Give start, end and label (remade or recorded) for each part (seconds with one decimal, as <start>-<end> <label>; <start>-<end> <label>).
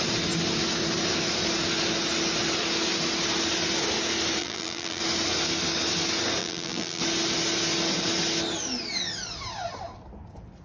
0.0-4.4 recorded; 4.4-5.0 remade; 5.0-6.4 recorded; 6.4-7.0 remade; 7.0-10.6 recorded